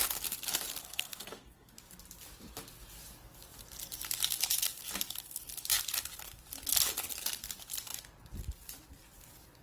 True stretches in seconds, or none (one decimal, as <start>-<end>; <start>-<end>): 0.0-0.8; 1.7-9.6